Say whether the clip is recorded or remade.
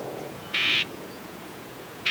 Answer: remade